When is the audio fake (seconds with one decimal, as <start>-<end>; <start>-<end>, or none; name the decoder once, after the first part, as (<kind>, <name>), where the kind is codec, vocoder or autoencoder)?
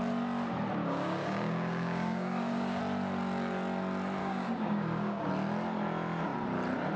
0.8-2.8 (codec, DAC); 4.2-5.3